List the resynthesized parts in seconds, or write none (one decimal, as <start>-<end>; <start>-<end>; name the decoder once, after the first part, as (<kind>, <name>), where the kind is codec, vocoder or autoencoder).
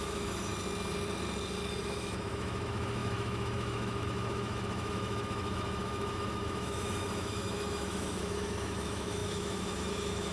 0.0-0.5 (autoencoder, DAC-VAE); 1.8-10.3